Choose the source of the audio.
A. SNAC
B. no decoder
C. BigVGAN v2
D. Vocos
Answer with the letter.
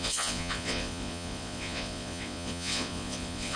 D